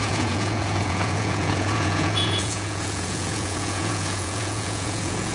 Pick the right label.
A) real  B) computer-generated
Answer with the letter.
B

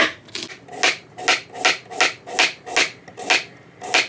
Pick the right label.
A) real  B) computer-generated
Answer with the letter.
A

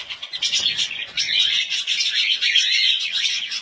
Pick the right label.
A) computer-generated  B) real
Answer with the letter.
A